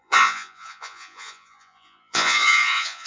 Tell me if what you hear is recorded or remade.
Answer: remade